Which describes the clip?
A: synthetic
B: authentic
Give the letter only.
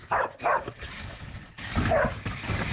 A